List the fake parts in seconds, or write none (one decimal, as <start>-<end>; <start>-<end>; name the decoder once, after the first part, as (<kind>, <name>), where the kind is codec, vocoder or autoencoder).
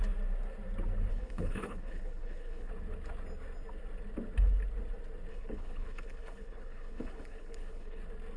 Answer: 1.1-2.7 (codec, HILCodec); 5.3-8.0